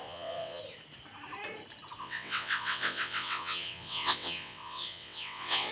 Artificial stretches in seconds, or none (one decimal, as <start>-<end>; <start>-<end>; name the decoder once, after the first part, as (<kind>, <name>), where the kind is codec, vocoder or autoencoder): 0.0-0.6 (vocoder, WaveNeXt); 2.0-5.7